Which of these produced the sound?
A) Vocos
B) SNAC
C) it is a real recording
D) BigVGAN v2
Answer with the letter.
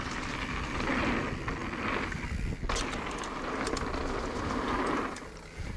C